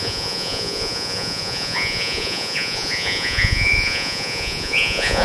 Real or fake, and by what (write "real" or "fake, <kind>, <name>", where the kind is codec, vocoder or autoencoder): fake, vocoder, Vocos